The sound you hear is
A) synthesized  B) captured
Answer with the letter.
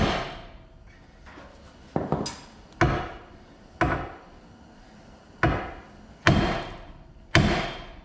B